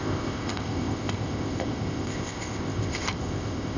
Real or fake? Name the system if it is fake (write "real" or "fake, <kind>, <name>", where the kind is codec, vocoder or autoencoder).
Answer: fake, codec, ZipCodec